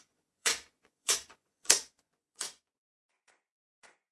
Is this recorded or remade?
remade